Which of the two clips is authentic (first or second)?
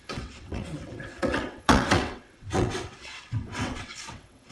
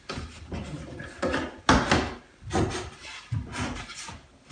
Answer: second